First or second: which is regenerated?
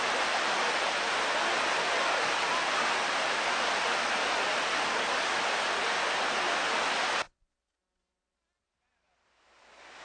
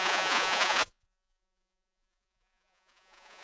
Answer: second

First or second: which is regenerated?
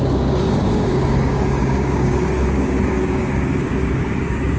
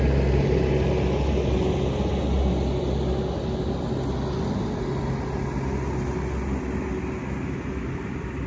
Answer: first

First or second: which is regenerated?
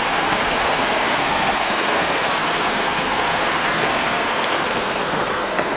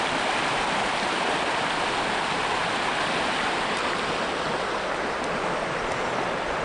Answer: first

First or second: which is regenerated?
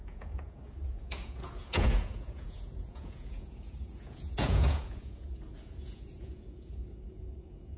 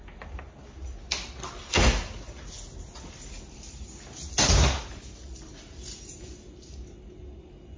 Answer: first